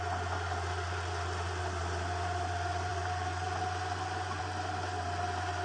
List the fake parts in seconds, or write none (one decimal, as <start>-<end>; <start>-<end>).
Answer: none